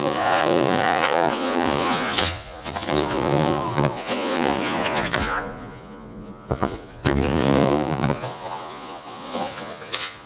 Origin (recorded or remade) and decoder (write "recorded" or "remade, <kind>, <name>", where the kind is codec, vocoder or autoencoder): remade, vocoder, Vocos